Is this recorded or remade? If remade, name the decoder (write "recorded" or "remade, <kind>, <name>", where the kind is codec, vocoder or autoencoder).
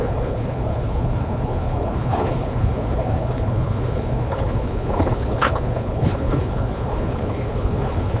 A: remade, codec, HILCodec